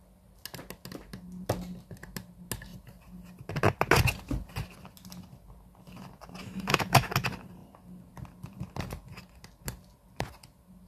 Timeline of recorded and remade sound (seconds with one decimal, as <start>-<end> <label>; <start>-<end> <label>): 0.0-6.4 recorded; 6.4-7.1 remade; 7.1-10.9 recorded

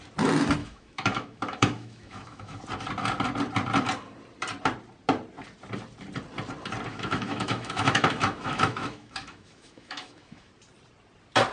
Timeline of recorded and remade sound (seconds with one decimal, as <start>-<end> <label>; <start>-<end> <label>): 0.0-0.6 recorded; 0.6-2.6 remade; 2.6-6.9 recorded; 6.9-10.5 remade; 10.5-11.5 recorded

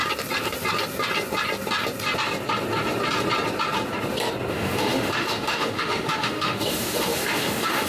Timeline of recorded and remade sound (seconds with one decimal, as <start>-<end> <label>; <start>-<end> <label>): 0.0-4.5 recorded; 4.5-7.9 remade

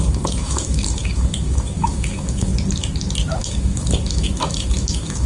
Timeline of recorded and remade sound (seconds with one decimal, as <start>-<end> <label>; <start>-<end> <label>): 0.0-2.5 remade; 2.5-3.4 recorded; 3.4-5.3 remade